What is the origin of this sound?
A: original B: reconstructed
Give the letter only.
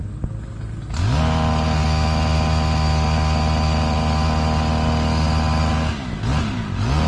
A